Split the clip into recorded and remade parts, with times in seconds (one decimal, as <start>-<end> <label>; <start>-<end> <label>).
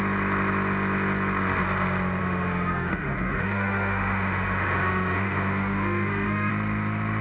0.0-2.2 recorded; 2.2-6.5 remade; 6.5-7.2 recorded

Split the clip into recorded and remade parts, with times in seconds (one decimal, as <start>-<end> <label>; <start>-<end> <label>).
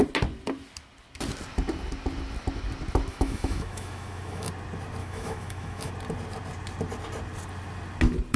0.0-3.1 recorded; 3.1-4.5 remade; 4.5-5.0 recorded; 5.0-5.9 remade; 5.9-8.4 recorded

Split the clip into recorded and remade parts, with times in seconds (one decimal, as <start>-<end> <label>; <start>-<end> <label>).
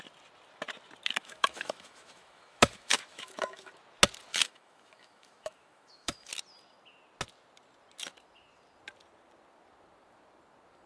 0.0-1.2 recorded; 1.2-3.7 remade; 3.7-4.3 recorded; 4.3-6.3 remade; 6.3-10.9 recorded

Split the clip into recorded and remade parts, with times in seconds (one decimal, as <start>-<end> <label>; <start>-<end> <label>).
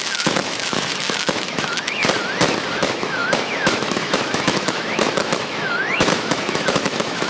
0.0-2.0 remade; 2.0-2.7 recorded; 2.7-7.3 remade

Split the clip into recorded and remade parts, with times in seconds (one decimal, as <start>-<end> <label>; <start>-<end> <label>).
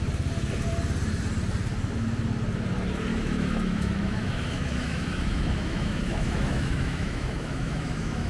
0.0-3.1 recorded; 3.1-8.3 remade